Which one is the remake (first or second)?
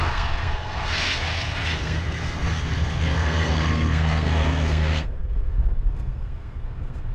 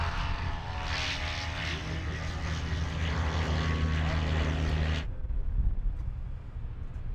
first